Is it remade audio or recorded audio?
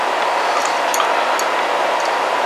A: recorded